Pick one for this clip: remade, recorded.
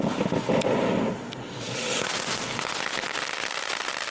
recorded